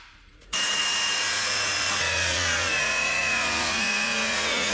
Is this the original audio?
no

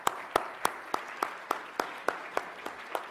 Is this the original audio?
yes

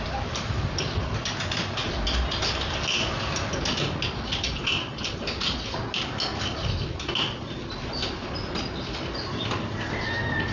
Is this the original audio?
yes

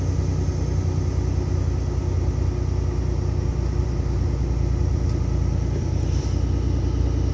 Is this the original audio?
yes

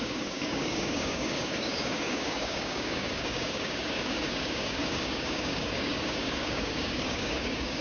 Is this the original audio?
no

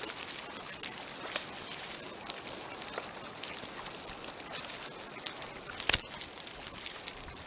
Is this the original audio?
yes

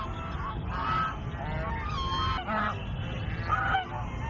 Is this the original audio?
yes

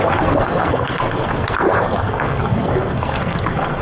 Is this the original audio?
no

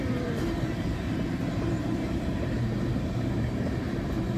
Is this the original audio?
no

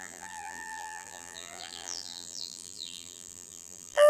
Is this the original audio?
no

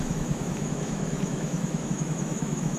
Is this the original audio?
no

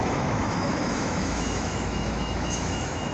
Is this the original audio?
no